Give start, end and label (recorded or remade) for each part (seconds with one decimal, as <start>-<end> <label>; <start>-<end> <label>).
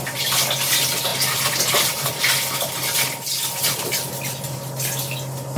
0.0-5.6 recorded